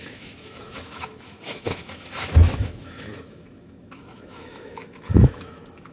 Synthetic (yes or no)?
yes